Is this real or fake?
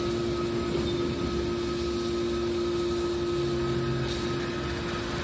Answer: real